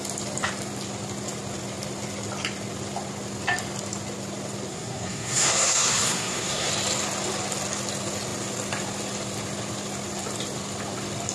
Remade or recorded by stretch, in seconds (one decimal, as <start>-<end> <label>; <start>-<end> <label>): 0.0-4.7 recorded; 4.7-6.7 remade; 6.7-11.3 recorded

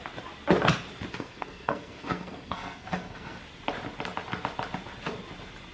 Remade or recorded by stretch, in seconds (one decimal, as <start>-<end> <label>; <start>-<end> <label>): 0.0-1.1 recorded; 1.1-3.4 remade; 3.4-5.7 recorded

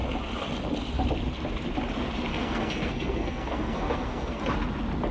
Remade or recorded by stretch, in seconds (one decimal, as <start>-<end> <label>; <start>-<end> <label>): 0.0-2.3 recorded; 2.3-4.4 remade; 4.4-5.1 recorded